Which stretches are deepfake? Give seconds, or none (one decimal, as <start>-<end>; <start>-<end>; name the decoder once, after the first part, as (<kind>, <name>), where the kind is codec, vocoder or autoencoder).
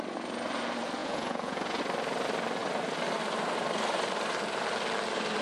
1.0-1.8 (vocoder, Vocos)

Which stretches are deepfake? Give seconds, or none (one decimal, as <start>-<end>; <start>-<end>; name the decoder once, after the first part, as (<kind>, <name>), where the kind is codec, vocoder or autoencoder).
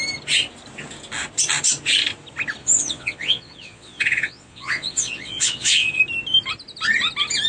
2.6-6.0 (vocoder, Vocos)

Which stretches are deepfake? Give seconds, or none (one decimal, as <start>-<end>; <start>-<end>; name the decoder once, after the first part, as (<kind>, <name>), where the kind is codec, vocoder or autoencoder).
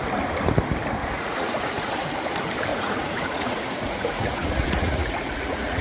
1.0-2.1 (vocoder, Vocos); 2.7-5.8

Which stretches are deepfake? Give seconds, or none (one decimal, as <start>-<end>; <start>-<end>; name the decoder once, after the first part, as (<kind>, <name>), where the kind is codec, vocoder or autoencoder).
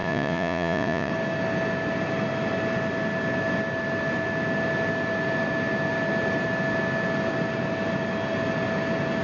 0.0-1.1 (vocoder, Vocos)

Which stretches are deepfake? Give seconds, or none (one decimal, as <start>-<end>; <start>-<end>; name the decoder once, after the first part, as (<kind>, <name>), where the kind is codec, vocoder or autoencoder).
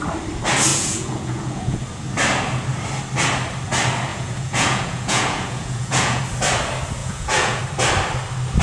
0.7-1.8 (vocoder, Vocos); 4.1-6.2; 7.0-7.6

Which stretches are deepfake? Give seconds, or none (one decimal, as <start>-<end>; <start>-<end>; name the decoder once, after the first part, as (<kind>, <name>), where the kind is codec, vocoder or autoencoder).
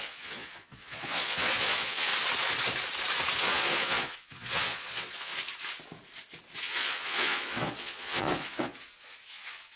0.0-2.1 (vocoder, Vocos); 3.4-5.3; 6.6-9.8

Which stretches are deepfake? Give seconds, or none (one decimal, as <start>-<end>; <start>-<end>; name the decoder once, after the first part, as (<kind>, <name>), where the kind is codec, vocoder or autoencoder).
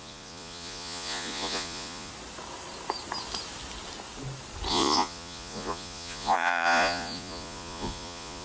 0.0-2.1 (vocoder, Vocos); 4.7-8.4